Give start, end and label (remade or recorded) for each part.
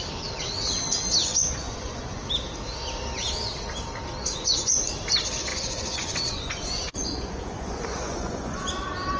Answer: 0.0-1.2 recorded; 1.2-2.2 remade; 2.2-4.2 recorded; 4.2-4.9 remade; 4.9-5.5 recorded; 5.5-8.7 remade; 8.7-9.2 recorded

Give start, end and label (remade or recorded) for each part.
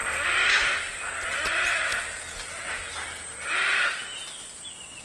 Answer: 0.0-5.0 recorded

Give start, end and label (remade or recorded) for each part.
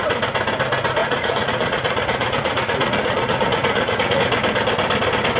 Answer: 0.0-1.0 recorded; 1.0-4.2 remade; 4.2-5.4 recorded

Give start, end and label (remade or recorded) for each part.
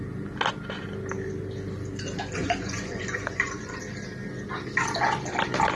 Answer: 0.0-2.4 recorded; 2.4-3.8 remade; 3.8-5.8 recorded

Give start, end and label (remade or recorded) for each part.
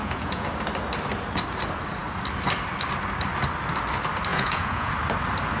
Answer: 0.0-0.5 remade; 0.5-4.3 recorded; 4.3-4.9 remade; 4.9-5.6 recorded